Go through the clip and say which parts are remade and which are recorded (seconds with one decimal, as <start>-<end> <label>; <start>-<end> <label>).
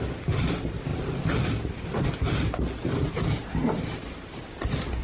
0.0-5.0 recorded